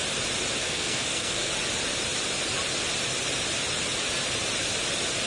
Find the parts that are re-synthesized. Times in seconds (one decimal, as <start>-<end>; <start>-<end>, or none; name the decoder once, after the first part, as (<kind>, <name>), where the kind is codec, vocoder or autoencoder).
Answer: 0.6-1.5 (codec, SNAC)